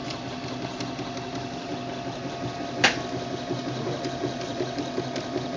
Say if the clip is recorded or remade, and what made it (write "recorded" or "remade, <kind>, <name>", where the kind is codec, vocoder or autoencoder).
recorded